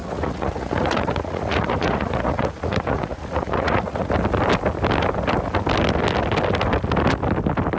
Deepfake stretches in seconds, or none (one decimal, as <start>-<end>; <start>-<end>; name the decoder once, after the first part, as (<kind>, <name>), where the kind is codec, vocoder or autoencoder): 0.0-4.1 (vocoder, Vocos)